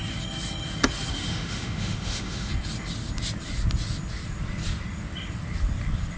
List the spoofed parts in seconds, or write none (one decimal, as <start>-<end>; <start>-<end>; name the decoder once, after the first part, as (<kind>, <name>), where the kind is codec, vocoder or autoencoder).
1.1-2.5 (autoencoder, DAC-VAE)

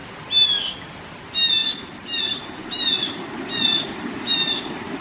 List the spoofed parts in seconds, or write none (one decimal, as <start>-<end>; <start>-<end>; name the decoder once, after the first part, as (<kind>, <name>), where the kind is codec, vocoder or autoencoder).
none